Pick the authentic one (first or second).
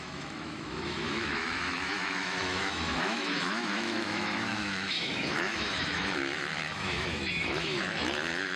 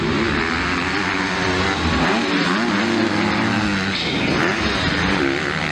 second